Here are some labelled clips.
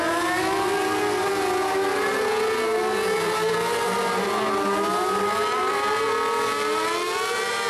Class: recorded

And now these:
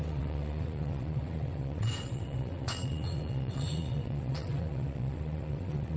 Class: remade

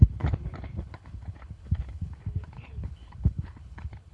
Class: remade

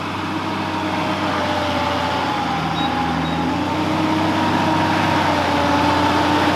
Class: recorded